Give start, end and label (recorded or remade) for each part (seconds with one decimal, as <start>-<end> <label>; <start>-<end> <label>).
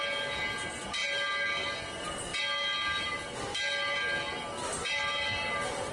0.0-5.9 recorded